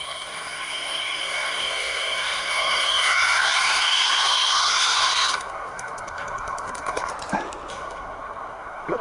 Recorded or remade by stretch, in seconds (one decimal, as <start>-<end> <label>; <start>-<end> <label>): 0.0-7.1 remade; 7.1-7.7 recorded; 7.7-9.0 remade